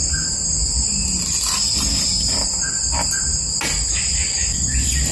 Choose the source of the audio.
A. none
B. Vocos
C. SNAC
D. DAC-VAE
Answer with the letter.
A